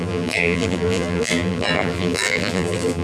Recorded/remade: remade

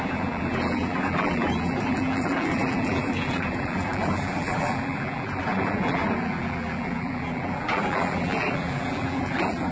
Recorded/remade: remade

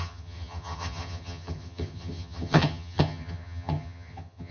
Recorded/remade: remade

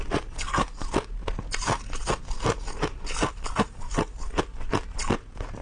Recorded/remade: recorded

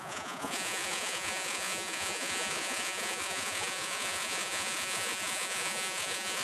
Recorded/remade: remade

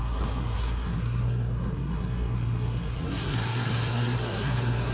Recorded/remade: remade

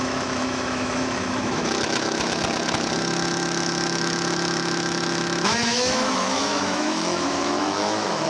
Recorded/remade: remade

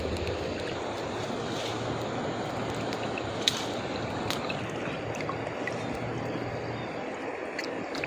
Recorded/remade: recorded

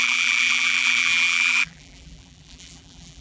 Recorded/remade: remade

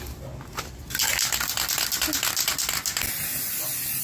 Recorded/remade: recorded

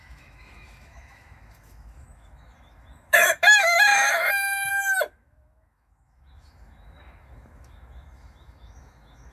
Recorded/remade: remade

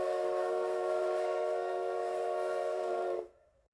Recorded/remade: remade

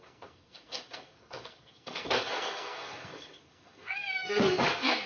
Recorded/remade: remade